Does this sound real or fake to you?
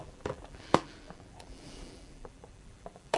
fake